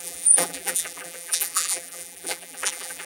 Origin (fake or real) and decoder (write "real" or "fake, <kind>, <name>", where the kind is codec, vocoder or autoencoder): fake, vocoder, BigVGAN v2